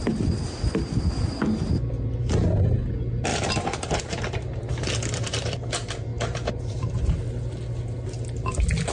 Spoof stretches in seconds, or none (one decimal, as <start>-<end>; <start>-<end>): 3.3-4.7; 6.1-7.1